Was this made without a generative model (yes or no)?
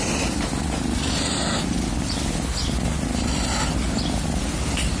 yes